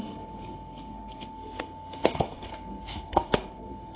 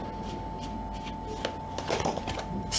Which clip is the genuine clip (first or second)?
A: second